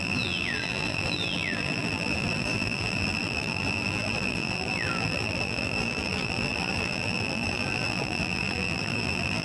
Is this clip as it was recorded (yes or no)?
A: no